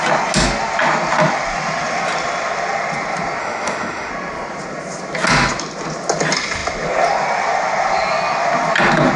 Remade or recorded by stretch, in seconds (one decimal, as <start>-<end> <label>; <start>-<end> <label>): 0.0-3.4 recorded; 3.4-4.1 remade; 4.1-9.2 recorded